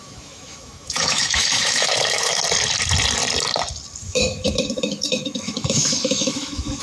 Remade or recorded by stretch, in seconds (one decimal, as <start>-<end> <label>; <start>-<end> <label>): 0.0-2.4 remade; 2.4-4.0 recorded; 4.0-6.8 remade